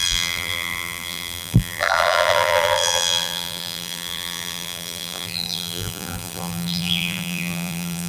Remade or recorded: remade